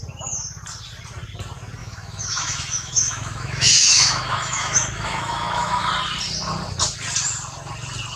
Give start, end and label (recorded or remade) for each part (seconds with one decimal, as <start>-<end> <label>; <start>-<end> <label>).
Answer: 0.0-1.8 recorded; 1.8-5.9 remade; 5.9-8.2 recorded